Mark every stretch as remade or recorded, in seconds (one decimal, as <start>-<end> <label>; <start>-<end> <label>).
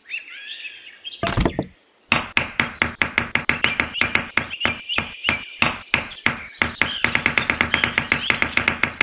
0.0-9.0 recorded